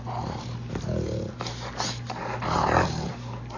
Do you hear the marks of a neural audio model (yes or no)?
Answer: no